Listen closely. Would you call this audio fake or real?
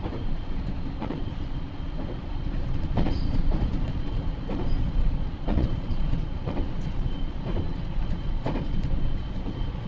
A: fake